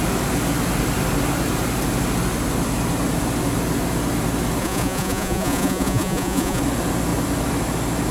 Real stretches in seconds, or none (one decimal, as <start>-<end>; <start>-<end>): 0.0-4.6; 6.6-8.1